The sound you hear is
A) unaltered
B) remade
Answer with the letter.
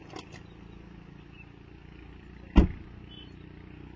A